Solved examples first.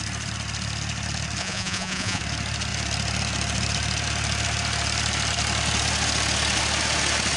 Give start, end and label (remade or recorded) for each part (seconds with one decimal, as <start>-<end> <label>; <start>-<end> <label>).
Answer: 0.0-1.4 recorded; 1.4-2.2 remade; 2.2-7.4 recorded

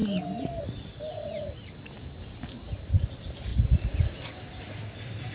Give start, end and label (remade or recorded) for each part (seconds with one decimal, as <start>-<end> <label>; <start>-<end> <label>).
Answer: 0.0-5.3 recorded

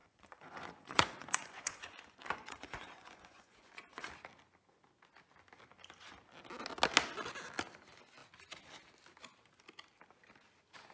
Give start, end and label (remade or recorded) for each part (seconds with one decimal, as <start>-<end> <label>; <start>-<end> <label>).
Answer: 0.0-4.1 remade; 4.1-10.9 recorded